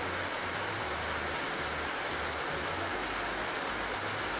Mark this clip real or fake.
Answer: real